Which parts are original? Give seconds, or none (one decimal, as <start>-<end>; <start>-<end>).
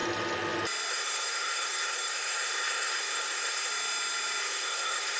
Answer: 0.0-0.9; 3.7-4.4